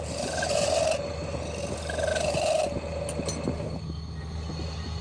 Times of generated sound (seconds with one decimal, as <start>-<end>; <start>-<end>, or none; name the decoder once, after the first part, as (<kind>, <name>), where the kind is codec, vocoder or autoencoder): none